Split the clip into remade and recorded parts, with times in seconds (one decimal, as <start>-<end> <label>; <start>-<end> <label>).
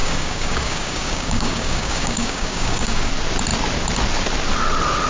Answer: 0.0-3.1 remade; 3.1-5.1 recorded